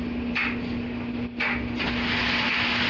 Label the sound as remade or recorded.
recorded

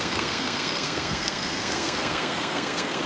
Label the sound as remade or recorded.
remade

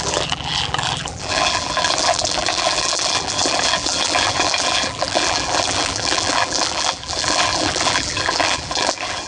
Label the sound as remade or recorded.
remade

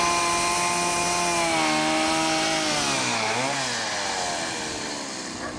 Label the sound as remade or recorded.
recorded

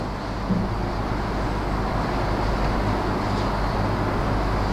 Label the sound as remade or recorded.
recorded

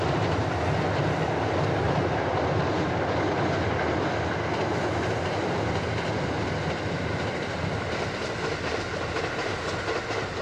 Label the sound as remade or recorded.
recorded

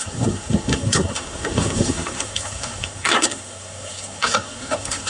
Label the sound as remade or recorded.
remade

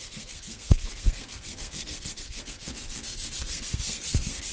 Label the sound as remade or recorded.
remade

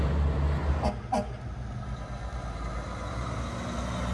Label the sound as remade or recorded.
recorded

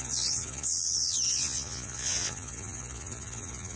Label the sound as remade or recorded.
remade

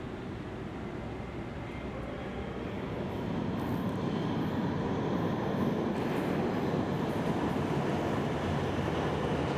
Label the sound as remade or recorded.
recorded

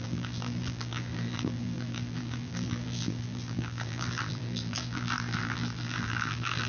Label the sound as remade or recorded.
remade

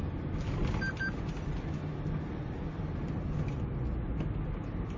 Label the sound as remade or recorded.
recorded